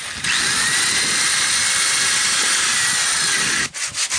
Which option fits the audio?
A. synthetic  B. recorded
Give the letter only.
B